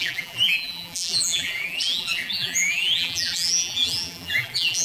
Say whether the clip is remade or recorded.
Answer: remade